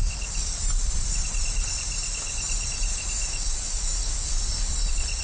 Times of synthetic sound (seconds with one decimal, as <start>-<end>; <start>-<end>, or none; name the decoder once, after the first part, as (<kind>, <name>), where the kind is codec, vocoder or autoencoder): 2.9-4.3 (autoencoder, DAC-VAE)